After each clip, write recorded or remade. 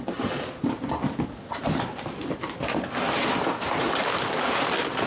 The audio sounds recorded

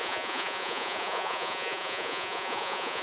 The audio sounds remade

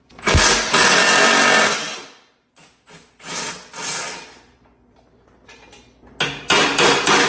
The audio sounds recorded